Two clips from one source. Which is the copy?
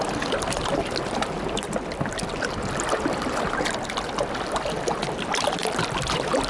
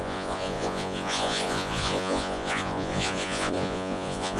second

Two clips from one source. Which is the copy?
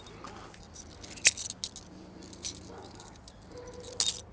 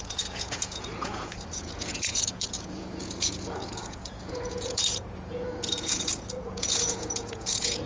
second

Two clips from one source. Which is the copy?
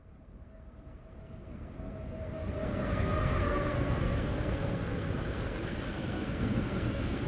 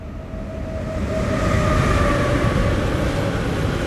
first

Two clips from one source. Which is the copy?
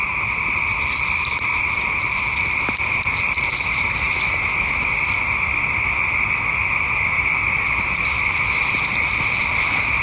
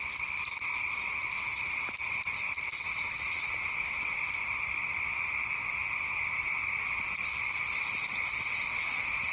second